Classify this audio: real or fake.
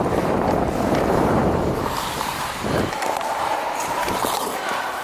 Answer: fake